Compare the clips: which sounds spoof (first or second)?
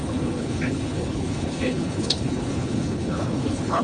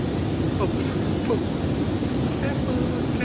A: first